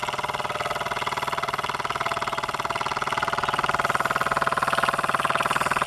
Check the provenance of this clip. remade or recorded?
recorded